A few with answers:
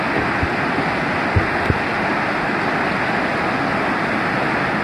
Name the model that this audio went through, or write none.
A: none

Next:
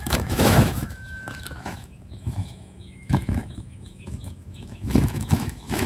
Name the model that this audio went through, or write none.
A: autoencoder, DAC-VAE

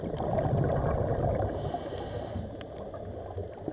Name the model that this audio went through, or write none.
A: none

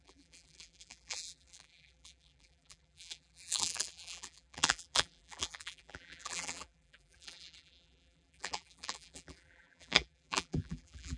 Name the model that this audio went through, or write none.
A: vocoder, BigVGAN v2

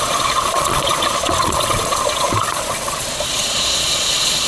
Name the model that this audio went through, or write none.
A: vocoder, Vocos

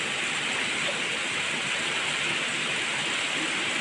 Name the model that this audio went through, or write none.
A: none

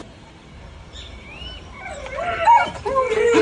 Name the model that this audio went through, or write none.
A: vocoder, BigVGAN v2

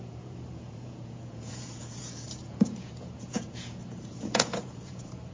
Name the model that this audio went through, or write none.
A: vocoder, Vocos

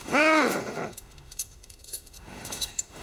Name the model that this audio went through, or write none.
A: autoencoder, DAC-VAE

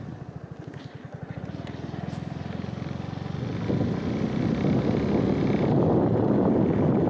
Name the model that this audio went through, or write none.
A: none